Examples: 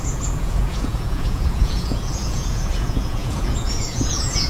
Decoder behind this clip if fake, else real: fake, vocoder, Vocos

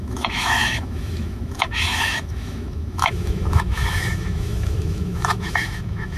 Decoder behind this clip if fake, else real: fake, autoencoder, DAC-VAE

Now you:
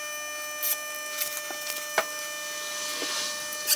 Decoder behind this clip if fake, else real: real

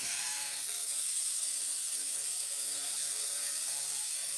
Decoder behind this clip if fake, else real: fake, codec, SNAC